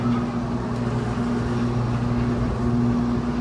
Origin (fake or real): real